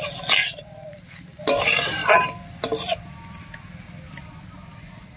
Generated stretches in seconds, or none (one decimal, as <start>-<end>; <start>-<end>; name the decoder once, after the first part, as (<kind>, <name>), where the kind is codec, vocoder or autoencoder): 0.4-1.4 (vocoder, BigVGAN v2); 2.0-5.2